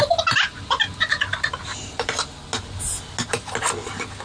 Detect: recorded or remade recorded